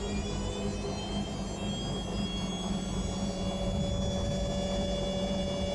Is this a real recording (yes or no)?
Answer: yes